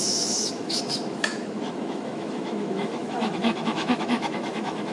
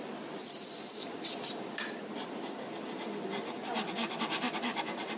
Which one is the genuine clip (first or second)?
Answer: second